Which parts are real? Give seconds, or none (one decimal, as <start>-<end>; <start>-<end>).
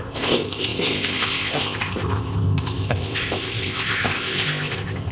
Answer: none